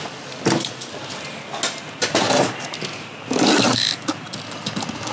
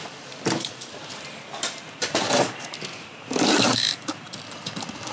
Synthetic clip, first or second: second